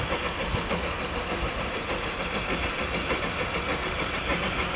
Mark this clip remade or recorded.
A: recorded